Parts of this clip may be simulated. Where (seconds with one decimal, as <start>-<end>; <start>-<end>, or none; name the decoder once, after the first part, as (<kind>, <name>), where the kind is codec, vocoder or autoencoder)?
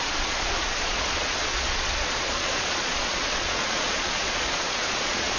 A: 0.0-5.4 (vocoder, Vocos)